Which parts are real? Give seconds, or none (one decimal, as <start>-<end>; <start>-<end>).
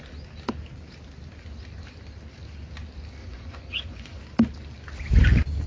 0.0-3.2; 4.2-5.7